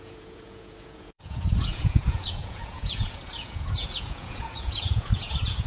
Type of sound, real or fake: fake